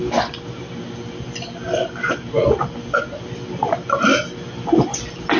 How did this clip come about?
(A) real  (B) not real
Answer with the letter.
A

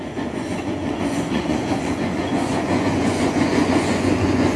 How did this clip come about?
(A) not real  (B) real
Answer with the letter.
A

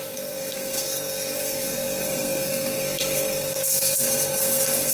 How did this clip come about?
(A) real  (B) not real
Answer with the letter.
B